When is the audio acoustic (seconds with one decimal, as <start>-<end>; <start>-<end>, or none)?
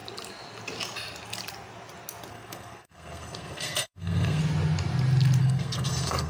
0.0-2.3; 4.4-5.4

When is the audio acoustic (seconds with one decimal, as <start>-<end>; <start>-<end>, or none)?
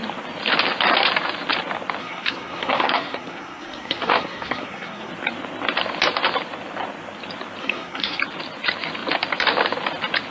0.0-2.0; 5.1-7.6; 8.2-10.3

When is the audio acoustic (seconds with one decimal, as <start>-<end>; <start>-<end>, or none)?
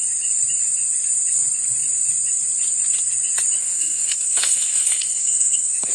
0.0-3.6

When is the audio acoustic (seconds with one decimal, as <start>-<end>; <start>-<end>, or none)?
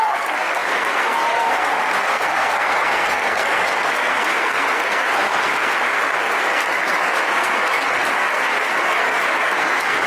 none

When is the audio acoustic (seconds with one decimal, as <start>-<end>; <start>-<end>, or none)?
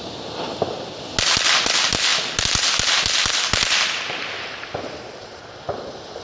0.0-6.2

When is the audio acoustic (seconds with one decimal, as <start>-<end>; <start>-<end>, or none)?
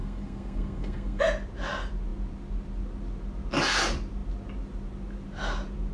1.2-5.9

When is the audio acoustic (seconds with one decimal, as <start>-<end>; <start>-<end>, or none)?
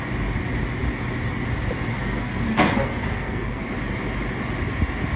0.0-1.9; 3.6-5.2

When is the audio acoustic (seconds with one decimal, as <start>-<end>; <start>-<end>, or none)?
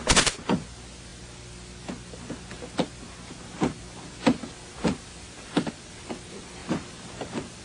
0.0-7.6